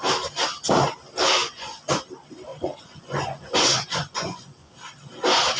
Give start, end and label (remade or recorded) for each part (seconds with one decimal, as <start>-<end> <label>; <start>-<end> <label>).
0.0-1.4 recorded; 1.4-1.9 remade; 1.9-2.5 recorded; 2.5-4.7 remade; 4.7-5.6 recorded